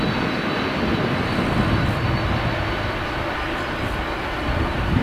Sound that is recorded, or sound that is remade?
recorded